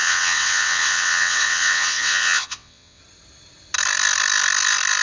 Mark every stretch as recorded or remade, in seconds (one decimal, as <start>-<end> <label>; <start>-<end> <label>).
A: 0.0-3.0 remade; 3.0-5.0 recorded